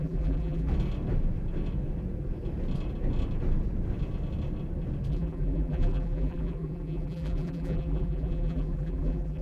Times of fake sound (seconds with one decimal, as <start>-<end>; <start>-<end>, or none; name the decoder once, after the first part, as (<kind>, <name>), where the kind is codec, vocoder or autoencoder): 0.0-0.7 (vocoder, BigVGAN v2); 5.1-9.4